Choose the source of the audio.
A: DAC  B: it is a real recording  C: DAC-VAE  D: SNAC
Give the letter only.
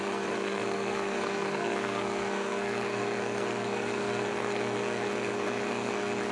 D